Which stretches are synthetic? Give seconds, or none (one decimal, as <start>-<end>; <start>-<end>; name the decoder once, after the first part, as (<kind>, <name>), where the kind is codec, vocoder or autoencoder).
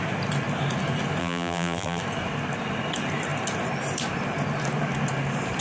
1.2-2.0 (vocoder, BigVGAN v2)